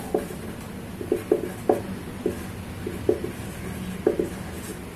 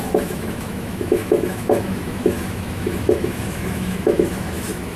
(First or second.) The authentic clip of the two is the first